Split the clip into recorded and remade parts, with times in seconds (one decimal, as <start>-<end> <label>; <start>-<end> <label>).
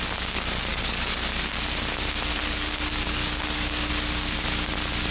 0.0-0.7 recorded; 0.7-1.5 remade; 1.5-2.3 recorded; 2.3-3.9 remade; 3.9-5.1 recorded